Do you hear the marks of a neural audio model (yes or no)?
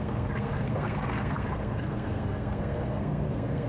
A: yes